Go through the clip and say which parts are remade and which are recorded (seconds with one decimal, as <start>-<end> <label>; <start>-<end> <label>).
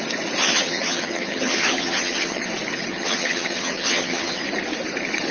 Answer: 0.0-0.4 recorded; 0.4-2.5 remade; 2.5-2.9 recorded; 2.9-4.4 remade; 4.4-5.3 recorded